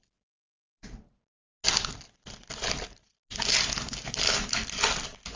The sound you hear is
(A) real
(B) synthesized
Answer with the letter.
A